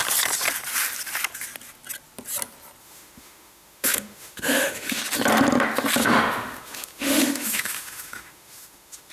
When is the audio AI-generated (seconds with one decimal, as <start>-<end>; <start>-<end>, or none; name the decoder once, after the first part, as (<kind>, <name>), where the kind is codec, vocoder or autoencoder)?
2.8-5.0 (autoencoder, DAC-VAE); 6.0-9.1